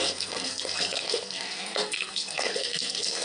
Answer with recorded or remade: remade